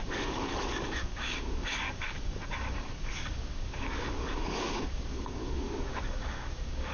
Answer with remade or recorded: remade